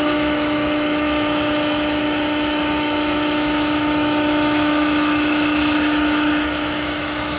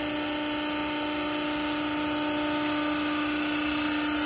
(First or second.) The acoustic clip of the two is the second